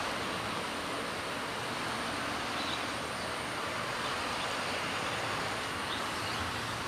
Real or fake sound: real